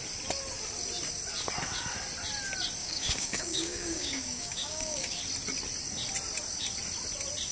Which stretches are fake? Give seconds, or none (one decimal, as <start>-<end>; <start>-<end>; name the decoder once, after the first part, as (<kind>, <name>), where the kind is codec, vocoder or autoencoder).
2.8-5.2 (codec, DAC)